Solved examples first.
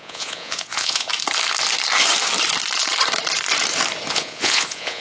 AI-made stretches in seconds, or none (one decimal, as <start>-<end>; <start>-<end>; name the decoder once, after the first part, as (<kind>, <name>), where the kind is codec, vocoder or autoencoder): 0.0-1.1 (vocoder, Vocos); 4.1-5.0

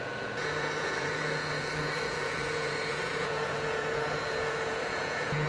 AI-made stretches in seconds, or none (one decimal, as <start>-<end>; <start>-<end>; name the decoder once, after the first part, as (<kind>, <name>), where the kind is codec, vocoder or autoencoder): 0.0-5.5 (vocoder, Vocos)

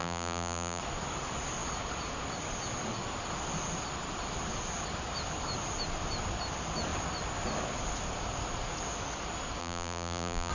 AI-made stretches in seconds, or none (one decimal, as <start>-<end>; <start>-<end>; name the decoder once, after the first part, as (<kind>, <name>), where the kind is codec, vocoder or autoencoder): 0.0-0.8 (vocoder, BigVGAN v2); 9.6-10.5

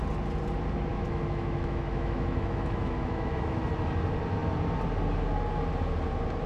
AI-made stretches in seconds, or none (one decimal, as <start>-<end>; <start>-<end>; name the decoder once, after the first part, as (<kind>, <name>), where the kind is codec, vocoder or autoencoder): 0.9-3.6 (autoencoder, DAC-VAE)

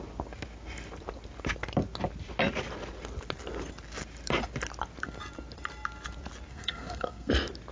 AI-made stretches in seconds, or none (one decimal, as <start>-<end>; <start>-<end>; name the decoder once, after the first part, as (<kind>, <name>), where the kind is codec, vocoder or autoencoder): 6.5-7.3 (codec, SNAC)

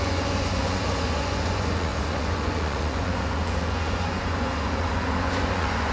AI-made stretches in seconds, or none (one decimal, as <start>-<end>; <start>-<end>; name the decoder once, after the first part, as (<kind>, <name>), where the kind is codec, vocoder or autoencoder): 0.0-5.9 (vocoder, Vocos)

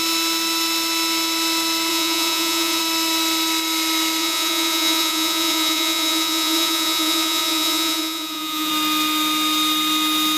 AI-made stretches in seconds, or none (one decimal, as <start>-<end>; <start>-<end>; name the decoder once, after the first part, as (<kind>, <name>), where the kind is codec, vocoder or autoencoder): 1.9-2.8 (vocoder, Vocos); 4.2-8.7

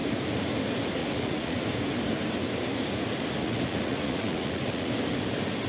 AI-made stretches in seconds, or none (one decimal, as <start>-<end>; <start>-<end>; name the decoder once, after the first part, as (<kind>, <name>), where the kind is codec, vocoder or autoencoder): 1.0-1.6 (vocoder, Vocos); 3.4-4.9